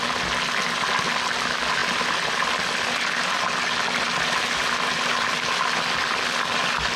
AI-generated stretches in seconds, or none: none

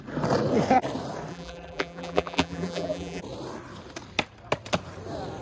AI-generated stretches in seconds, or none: 1.3-3.2 (vocoder, BigVGAN v2)

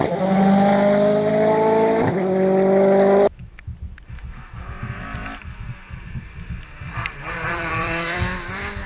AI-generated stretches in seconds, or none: 3.4-4.2 (vocoder, BigVGAN v2); 6.8-8.5